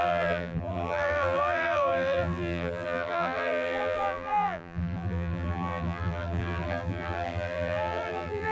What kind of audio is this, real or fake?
fake